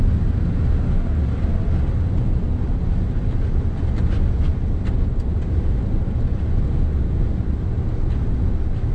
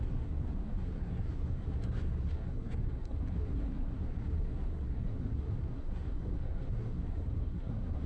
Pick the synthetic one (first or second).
second